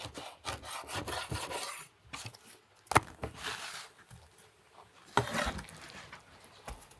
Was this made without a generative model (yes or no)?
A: yes